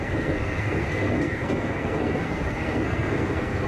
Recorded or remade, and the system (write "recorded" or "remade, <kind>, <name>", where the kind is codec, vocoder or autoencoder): remade, codec, SNAC